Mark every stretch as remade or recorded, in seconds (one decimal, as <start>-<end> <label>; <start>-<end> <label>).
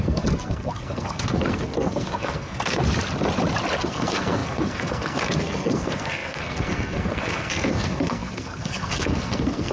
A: 0.0-2.9 remade; 2.9-3.8 recorded; 3.8-9.7 remade